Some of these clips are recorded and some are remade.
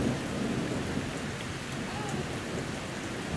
recorded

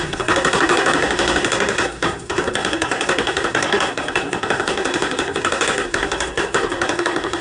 remade